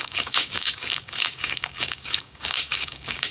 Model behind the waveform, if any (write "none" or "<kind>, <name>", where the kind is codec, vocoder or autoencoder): codec, DAC